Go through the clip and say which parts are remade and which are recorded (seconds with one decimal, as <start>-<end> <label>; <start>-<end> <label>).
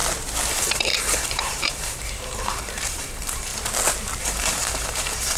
0.0-0.5 recorded; 0.5-3.5 remade; 3.5-4.2 recorded; 4.2-5.4 remade